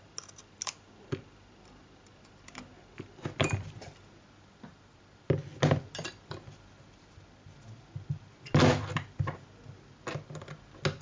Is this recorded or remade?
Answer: recorded